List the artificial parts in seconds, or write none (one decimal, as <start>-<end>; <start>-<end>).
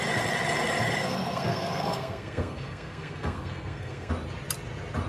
1.0-4.1